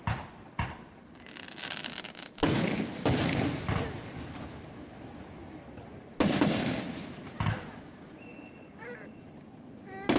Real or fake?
real